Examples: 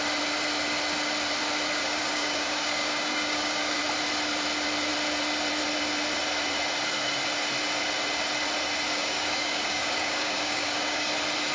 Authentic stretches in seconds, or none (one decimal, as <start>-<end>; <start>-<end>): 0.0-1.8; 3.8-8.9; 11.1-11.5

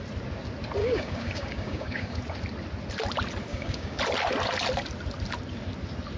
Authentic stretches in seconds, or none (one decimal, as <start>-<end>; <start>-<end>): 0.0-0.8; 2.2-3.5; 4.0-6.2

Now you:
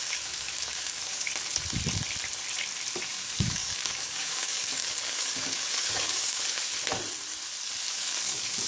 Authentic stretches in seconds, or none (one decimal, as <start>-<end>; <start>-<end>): 1.3-3.1; 6.7-7.9

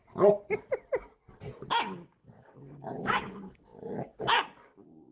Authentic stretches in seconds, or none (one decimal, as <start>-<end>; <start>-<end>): 0.0-1.7

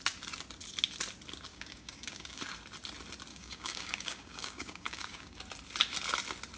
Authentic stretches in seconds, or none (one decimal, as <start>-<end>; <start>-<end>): 0.0-1.5; 2.4-3.3; 5.4-6.6

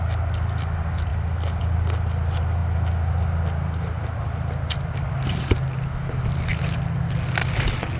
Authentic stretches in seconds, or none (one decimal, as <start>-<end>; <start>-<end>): 0.0-8.0

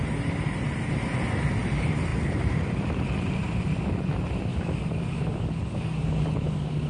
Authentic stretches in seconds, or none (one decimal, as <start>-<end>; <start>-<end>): 0.0-4.5